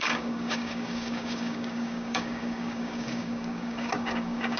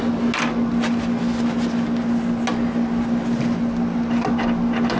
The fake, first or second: first